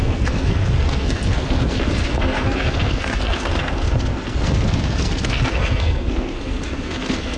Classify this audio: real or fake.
fake